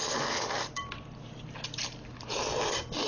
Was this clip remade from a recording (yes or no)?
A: no